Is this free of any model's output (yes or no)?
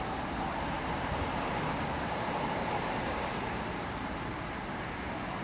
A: no